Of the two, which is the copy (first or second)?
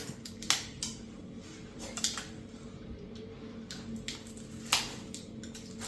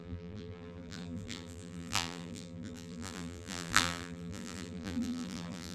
second